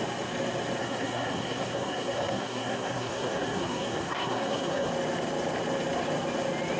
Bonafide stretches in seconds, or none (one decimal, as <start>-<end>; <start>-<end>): 0.0-0.8; 4.9-6.8